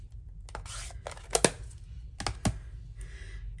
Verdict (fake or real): real